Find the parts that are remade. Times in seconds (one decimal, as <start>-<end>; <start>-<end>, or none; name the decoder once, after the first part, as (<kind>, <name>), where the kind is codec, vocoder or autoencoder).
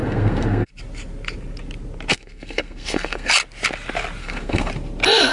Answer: 0.0-0.7 (codec, SNAC); 2.1-3.3; 4.2-4.7